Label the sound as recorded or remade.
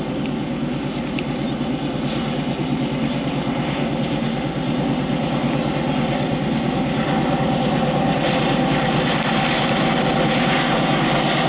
recorded